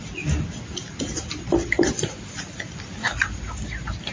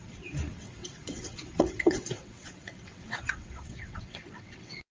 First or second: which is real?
first